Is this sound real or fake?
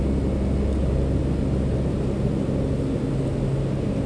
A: real